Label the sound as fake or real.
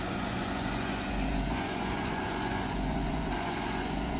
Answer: fake